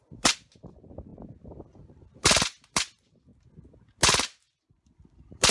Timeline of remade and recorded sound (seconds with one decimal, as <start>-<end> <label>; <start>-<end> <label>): 0.0-3.3 remade; 3.3-4.6 recorded; 4.6-5.5 remade

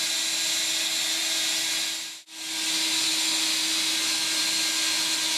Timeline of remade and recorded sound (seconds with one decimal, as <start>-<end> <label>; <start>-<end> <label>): 0.0-5.4 recorded

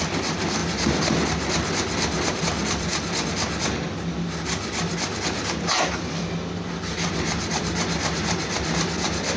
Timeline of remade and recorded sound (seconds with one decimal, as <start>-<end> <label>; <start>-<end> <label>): 0.0-2.9 remade; 2.9-6.0 recorded; 6.0-9.4 remade

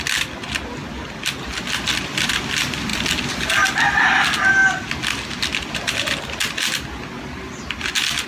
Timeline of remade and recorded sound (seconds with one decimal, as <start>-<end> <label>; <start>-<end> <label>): 0.0-8.3 recorded

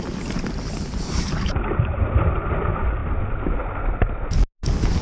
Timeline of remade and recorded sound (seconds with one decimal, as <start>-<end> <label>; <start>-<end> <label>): 0.0-0.9 recorded; 0.9-2.2 remade; 2.2-5.0 recorded

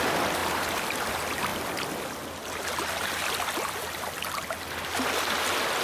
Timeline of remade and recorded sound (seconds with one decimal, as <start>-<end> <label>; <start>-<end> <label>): 0.0-0.4 recorded; 0.4-1.1 remade; 1.1-5.8 recorded

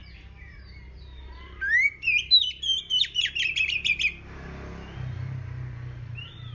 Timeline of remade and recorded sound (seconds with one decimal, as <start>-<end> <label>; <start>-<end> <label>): 0.0-3.9 remade; 3.9-6.5 recorded